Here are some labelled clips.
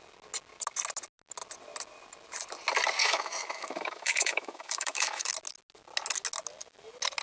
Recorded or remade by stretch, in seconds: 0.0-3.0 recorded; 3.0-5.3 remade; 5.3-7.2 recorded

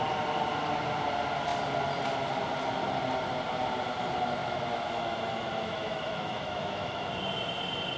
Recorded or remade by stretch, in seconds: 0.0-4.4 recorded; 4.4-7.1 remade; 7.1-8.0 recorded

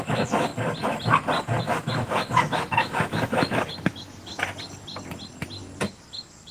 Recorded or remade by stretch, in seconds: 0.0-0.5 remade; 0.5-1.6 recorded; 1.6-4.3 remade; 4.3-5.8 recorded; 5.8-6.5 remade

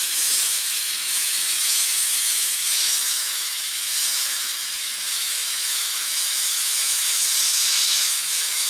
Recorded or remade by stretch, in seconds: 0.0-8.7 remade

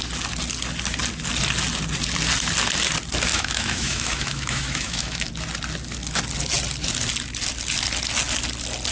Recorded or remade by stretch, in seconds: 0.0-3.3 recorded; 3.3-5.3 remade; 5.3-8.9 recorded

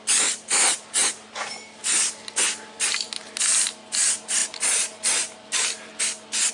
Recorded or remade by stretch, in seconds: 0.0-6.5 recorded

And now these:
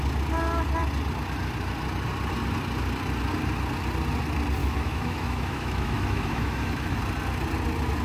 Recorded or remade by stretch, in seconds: 0.0-4.6 recorded; 4.6-7.0 remade; 7.0-8.0 recorded

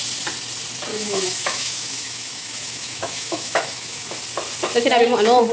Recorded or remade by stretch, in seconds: 0.0-0.9 recorded; 0.9-4.2 remade; 4.2-5.5 recorded